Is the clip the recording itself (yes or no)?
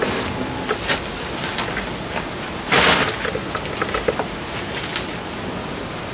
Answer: yes